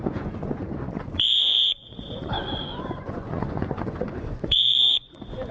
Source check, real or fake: fake